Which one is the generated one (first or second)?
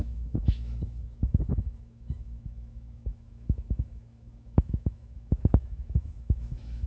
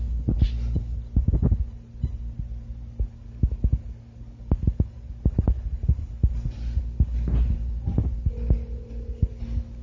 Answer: first